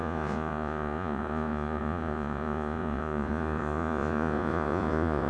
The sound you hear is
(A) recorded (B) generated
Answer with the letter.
B